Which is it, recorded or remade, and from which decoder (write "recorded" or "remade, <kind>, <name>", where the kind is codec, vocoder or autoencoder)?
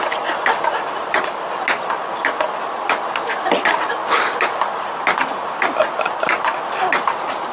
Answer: recorded